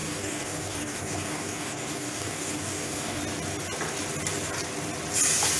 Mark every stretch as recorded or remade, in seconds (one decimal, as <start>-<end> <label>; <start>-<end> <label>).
0.0-3.2 remade; 3.2-5.6 recorded